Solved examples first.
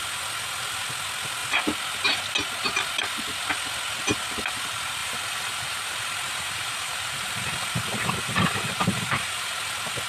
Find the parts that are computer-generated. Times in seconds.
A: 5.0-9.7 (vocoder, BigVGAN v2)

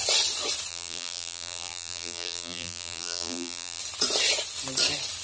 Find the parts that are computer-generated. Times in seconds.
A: 0.7-3.8 (vocoder, BigVGAN v2)

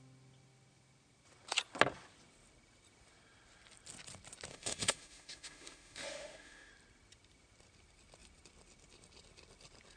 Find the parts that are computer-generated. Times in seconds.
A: 4.5-6.7 (autoencoder, DAC-VAE)

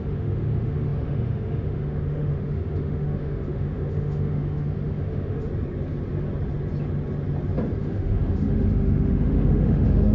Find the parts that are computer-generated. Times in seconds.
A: 0.0-5.5 (autoencoder, DAC-VAE); 7.8-10.1

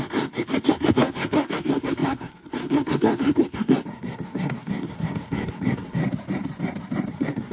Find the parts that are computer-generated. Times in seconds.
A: 0.0-6.0 (codec, SNAC); 7.1-7.5

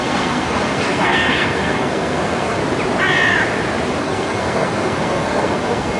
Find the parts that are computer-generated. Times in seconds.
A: 0.0-2.6 (codec, SNAC); 4.0-6.0